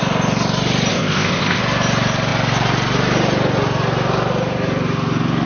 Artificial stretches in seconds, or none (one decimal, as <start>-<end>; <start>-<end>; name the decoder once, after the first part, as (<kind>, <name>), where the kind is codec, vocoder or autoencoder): 0.9-1.6 (codec, ZipCodec)

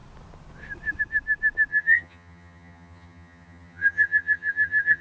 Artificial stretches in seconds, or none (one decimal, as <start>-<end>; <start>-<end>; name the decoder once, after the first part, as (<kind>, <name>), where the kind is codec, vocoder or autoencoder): 1.7-5.0 (vocoder, HiFi-GAN)

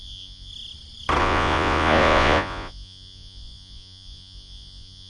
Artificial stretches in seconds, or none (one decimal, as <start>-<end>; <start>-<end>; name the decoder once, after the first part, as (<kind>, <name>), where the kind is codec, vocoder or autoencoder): 0.0-0.5 (vocoder, Vocos); 1.2-5.1

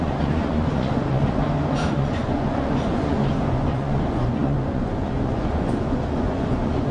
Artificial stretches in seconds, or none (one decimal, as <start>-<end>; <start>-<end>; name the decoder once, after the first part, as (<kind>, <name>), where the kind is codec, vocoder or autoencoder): 0.0-1.4 (vocoder, Vocos); 1.9-6.9